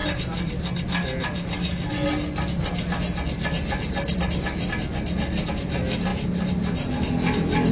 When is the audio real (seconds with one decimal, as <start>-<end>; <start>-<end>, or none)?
0.0-7.7